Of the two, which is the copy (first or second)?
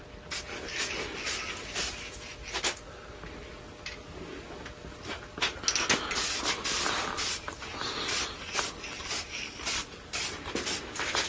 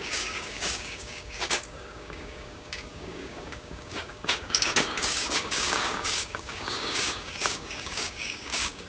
second